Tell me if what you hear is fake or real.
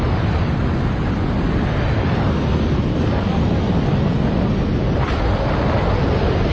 real